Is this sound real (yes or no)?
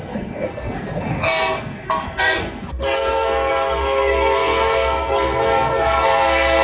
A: no